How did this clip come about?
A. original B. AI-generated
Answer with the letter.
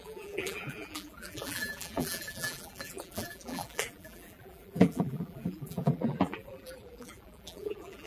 B